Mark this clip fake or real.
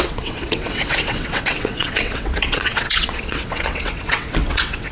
fake